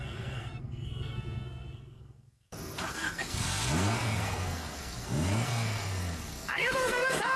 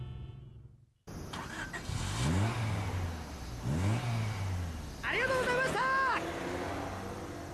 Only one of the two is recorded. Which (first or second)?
second